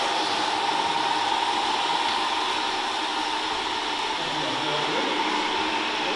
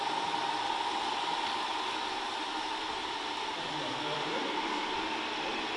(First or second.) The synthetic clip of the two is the second